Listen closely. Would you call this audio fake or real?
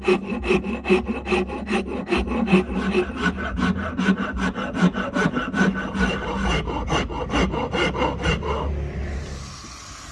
real